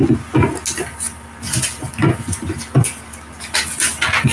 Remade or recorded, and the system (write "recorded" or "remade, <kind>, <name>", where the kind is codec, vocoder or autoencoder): recorded